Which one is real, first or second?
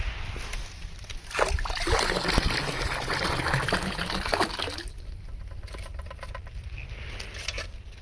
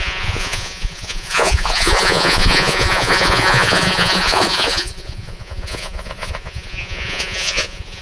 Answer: first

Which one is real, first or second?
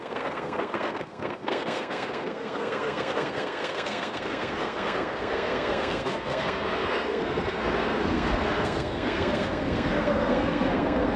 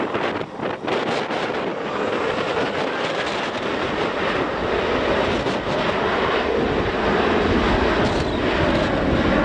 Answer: second